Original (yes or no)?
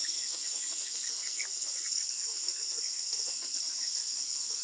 no